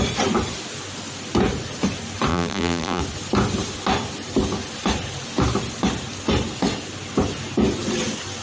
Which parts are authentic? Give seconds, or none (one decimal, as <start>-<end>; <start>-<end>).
0.0-2.3; 3.0-8.4